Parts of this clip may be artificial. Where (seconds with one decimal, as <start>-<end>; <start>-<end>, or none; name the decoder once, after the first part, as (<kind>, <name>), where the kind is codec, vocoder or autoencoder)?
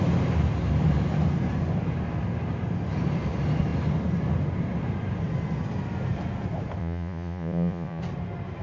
6.8-8.0 (vocoder, Vocos)